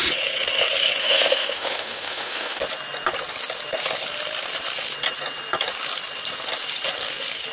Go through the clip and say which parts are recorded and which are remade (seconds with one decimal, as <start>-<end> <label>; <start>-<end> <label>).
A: 0.0-1.0 recorded; 1.0-2.6 remade; 2.6-7.5 recorded